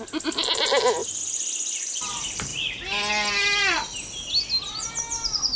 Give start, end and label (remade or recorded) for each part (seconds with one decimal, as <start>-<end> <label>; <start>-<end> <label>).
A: 0.0-5.6 recorded